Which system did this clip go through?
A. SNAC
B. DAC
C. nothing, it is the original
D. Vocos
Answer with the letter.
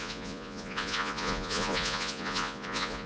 D